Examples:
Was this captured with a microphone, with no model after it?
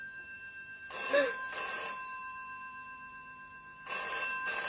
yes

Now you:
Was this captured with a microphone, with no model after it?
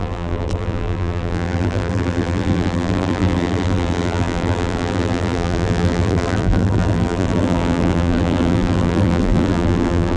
no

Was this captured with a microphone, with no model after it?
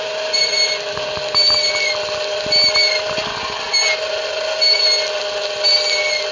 yes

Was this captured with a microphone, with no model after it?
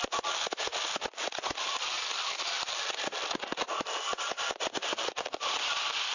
yes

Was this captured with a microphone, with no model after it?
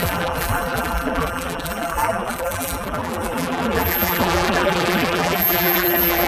no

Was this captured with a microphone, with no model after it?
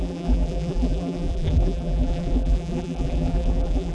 no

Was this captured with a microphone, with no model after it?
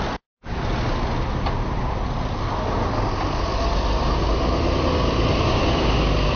yes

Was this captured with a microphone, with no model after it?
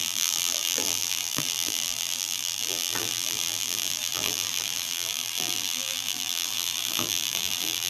no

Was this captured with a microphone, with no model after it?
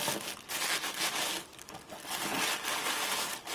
yes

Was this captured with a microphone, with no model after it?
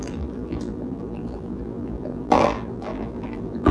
no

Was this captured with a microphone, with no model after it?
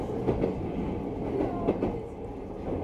yes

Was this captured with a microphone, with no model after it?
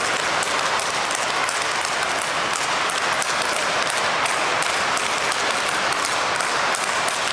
yes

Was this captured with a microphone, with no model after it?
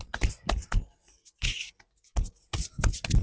yes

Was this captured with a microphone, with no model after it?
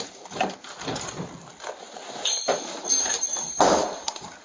no